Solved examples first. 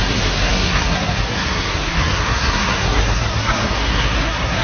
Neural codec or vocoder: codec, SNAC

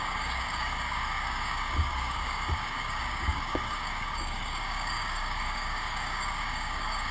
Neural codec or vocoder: codec, DAC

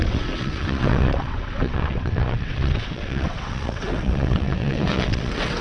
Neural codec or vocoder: vocoder, WaveNeXt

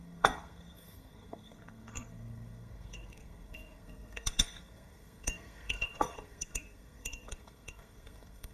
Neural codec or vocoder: codec, SNAC